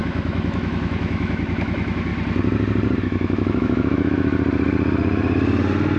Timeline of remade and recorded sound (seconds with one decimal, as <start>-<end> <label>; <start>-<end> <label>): 0.0-2.1 remade; 2.1-3.0 recorded; 3.0-4.3 remade; 4.3-6.0 recorded